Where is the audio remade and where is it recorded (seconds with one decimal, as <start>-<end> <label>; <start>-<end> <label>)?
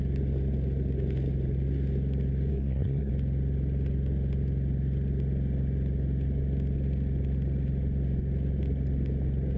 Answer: 0.0-2.5 recorded; 2.5-3.1 remade; 3.1-9.6 recorded